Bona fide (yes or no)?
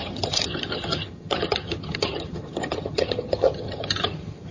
no